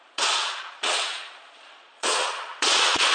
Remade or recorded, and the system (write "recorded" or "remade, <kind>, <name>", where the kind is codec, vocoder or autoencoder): remade, vocoder, Vocos